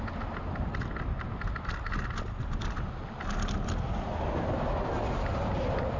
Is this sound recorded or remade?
recorded